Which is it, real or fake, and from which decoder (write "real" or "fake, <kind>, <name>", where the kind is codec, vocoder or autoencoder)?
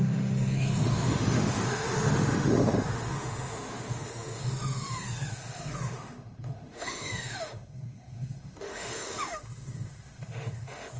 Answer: fake, autoencoder, DAC-VAE